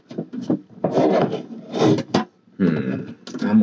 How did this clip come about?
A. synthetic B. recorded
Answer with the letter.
B